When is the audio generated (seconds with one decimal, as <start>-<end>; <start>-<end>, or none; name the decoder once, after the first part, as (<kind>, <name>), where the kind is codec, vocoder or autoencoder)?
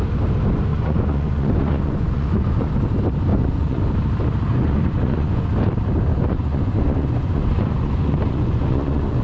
0.7-2.7 (vocoder, Vocos); 3.3-3.8; 4.5-5.5; 6.1-9.2